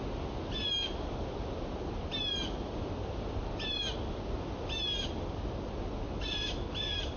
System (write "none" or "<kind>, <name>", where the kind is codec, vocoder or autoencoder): none